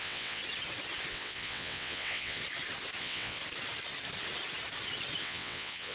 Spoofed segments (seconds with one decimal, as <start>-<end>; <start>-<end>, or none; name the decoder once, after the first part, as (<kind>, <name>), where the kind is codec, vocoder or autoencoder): 0.0-0.4 (vocoder, WaveNeXt); 1.1-2.4; 3.0-3.4; 5.2-5.9